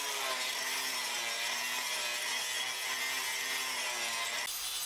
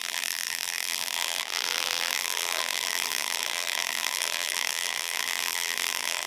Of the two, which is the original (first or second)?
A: first